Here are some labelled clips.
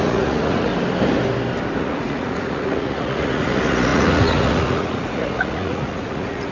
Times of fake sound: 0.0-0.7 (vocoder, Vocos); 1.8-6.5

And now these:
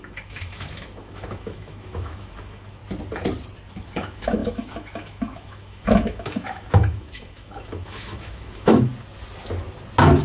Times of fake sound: 0.0-2.8 (autoencoder, DAC-VAE); 3.7-8.9

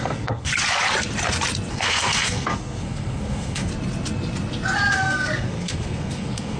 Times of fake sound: 0.0-0.5 (codec, SNAC); 1.7-3.7; 4.9-6.6

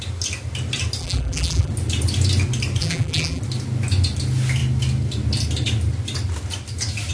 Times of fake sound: 1.0-1.7 (vocoder, BigVGAN v2); 2.8-3.4

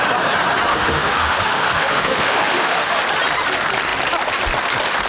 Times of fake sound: 0.7-3.0 (autoencoder, DAC-VAE)

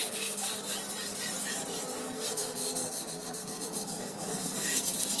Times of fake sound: 0.0-0.6 (codec, SNAC); 2.0-5.2

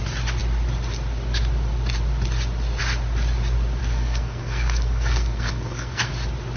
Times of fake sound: 3.8-6.1 (codec, SNAC)

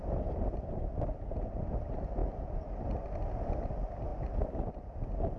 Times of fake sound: none